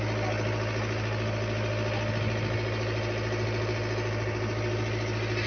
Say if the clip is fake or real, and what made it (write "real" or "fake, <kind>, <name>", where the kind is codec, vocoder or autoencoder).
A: real